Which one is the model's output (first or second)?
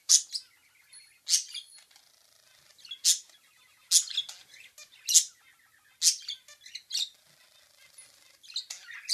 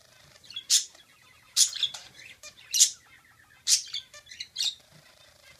second